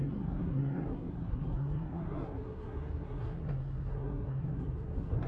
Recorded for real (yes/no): no